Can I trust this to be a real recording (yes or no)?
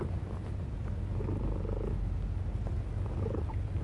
yes